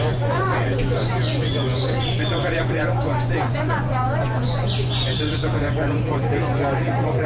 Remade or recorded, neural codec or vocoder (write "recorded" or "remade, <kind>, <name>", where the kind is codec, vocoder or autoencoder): remade, vocoder, Vocos